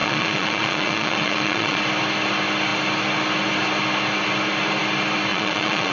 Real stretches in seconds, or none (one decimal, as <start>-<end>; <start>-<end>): 1.8-5.3